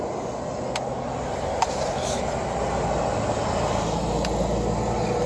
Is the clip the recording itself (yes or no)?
yes